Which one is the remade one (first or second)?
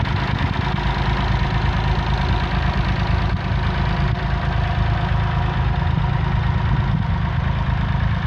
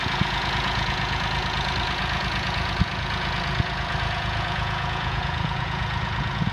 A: second